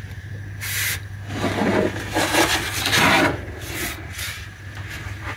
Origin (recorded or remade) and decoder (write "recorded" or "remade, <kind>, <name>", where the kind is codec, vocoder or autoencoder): recorded